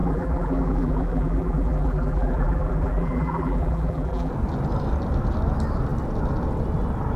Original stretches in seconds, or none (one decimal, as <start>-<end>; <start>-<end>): 4.3-7.2